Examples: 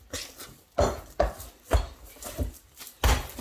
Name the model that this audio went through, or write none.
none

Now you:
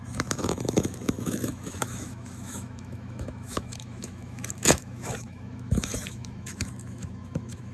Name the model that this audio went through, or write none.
autoencoder, DAC-VAE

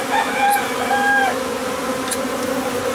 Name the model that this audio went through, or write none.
none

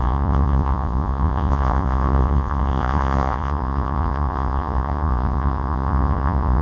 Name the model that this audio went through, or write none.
vocoder, Vocos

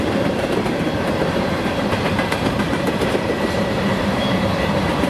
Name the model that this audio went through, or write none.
vocoder, BigVGAN v2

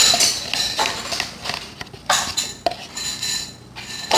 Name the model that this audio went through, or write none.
none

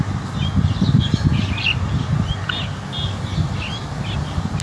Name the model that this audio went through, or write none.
none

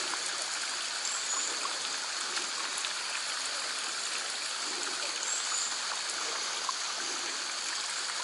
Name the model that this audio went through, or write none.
none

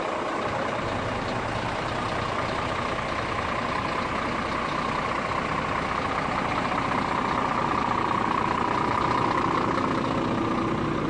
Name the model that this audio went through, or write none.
none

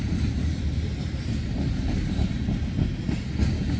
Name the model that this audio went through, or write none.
none